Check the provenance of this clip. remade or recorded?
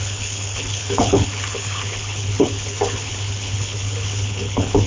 remade